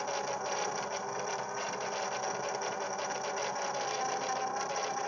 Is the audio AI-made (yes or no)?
no